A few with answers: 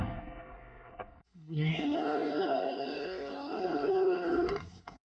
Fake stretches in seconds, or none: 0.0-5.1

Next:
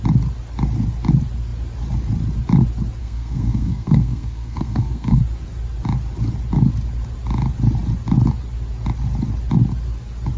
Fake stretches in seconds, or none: 3.0-5.2

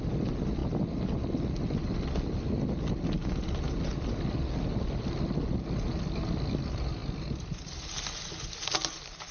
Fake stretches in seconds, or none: none

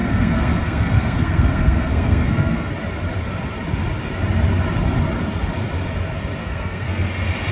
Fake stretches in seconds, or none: 0.0-2.7; 6.4-7.1

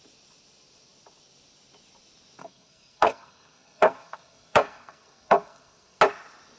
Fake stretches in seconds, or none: 2.4-6.0

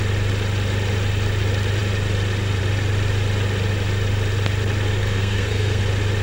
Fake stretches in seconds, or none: 5.0-5.8

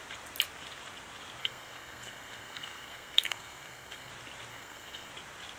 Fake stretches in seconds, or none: 1.4-4.1; 4.5-5.1